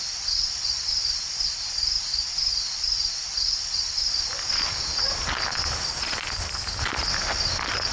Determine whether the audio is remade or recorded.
recorded